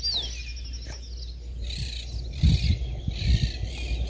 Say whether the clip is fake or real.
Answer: real